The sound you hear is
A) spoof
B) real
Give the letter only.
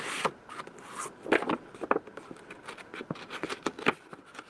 B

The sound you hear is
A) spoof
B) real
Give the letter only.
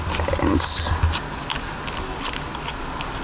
B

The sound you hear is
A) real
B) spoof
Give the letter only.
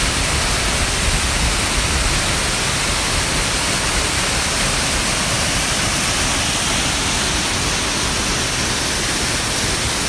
A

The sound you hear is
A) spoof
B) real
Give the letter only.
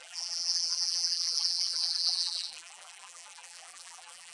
A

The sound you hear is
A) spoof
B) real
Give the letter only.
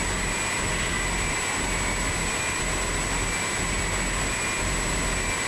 B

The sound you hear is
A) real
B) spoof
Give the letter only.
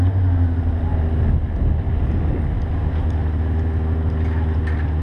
A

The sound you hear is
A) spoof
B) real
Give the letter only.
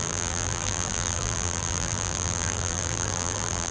A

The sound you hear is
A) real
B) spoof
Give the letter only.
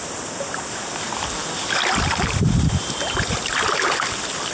A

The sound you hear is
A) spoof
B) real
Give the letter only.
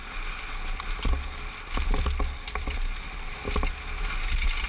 B